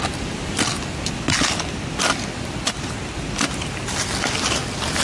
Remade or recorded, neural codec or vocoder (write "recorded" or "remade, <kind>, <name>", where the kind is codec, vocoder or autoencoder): recorded